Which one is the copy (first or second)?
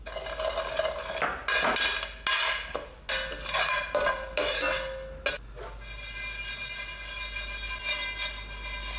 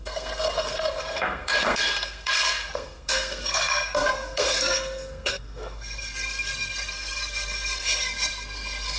second